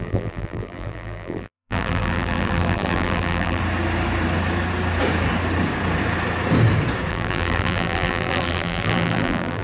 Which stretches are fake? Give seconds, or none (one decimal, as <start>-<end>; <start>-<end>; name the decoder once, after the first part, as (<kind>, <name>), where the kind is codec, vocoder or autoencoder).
0.0-3.6 (vocoder, BigVGAN v2); 7.1-9.6